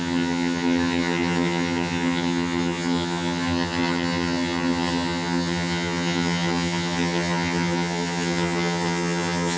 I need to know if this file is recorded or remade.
remade